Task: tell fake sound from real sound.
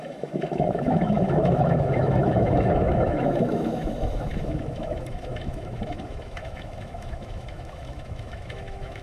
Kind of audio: fake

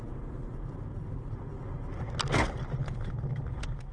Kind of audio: real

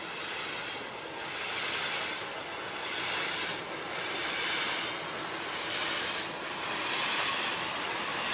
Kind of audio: real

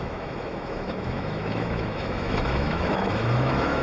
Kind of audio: fake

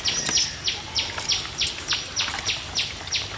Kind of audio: real